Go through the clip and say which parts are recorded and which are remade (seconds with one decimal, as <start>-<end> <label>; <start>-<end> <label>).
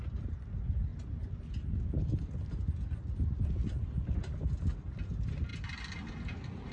0.0-6.7 recorded